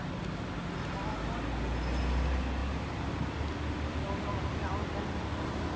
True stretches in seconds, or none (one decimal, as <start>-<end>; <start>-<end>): 0.0-5.8